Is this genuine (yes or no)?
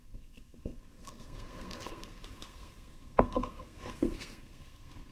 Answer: no